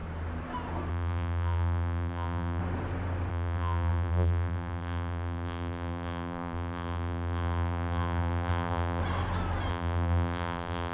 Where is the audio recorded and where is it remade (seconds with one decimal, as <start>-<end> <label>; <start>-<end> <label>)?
0.0-0.9 recorded; 0.9-2.6 remade; 2.6-3.3 recorded; 3.3-9.0 remade; 9.0-9.7 recorded; 9.7-10.9 remade